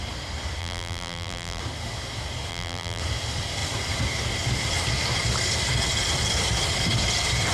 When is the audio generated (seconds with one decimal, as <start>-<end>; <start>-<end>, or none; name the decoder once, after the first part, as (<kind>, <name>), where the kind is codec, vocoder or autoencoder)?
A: 0.6-1.6 (vocoder, BigVGAN v2); 2.5-3.0